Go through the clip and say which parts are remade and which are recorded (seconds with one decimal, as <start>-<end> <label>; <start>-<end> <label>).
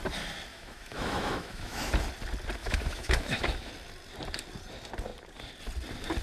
0.0-0.5 recorded; 0.5-1.9 remade; 1.9-2.6 recorded; 2.6-3.7 remade; 3.7-6.2 recorded